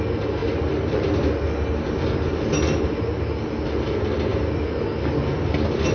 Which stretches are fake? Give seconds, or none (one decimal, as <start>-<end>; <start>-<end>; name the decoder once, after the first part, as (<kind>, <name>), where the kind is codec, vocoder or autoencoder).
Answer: 0.4-3.9 (vocoder, BigVGAN v2)